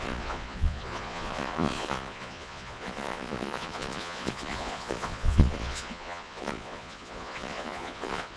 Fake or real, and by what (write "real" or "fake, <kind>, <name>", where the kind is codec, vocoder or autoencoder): fake, vocoder, Vocos